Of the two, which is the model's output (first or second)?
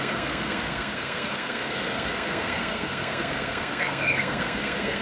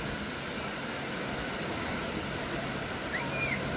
first